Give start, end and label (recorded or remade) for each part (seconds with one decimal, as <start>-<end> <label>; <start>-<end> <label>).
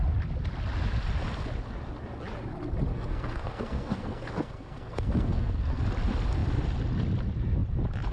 0.0-2.9 recorded; 2.9-5.8 remade; 5.8-8.1 recorded